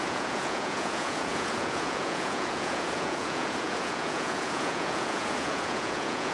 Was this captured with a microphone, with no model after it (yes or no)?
no